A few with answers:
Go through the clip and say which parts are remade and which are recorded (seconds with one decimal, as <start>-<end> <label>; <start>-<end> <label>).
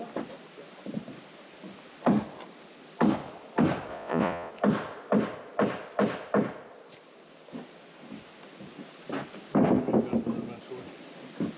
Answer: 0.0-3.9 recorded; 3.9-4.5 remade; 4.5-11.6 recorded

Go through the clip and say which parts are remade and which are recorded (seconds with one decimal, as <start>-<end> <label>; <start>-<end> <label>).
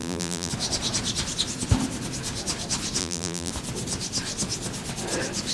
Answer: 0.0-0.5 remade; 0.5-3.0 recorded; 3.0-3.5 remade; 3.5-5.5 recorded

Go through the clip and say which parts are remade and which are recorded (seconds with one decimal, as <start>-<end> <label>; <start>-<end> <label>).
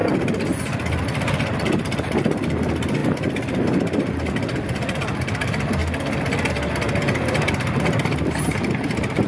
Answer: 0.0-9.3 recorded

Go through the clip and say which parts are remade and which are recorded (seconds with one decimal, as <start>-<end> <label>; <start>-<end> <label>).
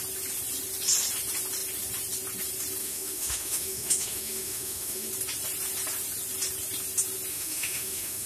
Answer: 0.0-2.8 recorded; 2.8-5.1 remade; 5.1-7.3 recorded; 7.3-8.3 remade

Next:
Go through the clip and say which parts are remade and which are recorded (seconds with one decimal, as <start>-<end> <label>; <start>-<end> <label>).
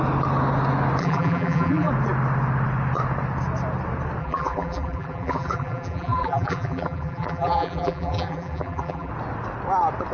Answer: 0.0-1.0 recorded; 1.0-1.9 remade; 1.9-4.2 recorded; 4.2-9.1 remade; 9.1-10.1 recorded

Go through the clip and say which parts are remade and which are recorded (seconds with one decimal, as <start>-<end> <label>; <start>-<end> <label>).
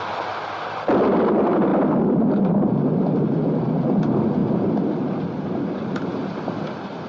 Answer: 0.0-7.1 recorded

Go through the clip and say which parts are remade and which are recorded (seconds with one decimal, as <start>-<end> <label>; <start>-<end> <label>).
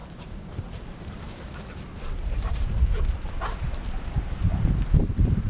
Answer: 0.0-3.3 remade; 3.3-5.5 recorded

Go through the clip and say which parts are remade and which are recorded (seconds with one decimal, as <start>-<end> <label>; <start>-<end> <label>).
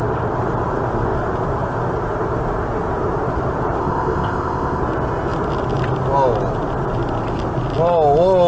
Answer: 0.0-3.8 recorded; 3.8-4.8 remade; 4.8-8.5 recorded